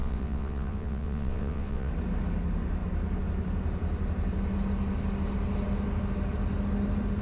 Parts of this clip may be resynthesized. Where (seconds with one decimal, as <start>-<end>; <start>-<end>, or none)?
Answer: 0.0-1.9